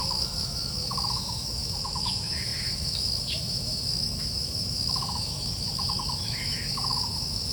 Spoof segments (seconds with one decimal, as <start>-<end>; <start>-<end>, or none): 0.0-7.5